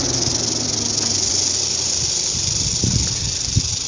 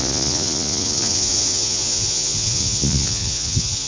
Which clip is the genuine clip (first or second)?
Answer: first